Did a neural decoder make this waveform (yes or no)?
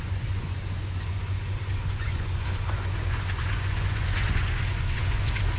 yes